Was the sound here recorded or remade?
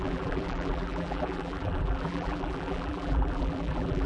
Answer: remade